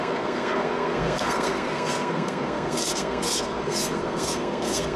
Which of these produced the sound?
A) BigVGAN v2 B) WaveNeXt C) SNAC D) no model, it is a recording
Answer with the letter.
C